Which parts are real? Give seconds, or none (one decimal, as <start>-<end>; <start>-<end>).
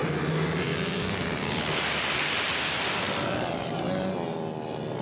0.0-5.0